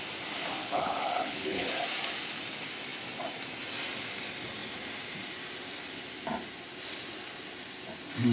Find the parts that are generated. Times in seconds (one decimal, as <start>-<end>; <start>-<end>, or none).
0.6-1.7